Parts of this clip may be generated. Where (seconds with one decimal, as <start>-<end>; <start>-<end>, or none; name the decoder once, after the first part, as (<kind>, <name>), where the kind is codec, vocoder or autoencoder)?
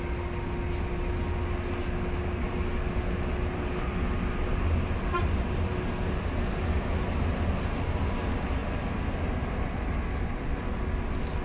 none